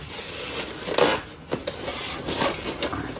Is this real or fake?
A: real